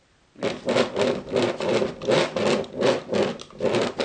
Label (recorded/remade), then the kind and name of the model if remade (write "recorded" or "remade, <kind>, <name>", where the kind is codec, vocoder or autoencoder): recorded